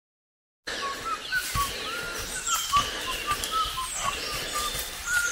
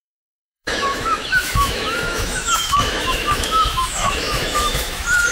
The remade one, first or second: second